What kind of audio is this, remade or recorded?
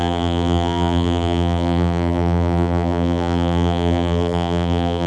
remade